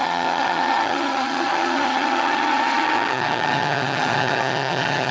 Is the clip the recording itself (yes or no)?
no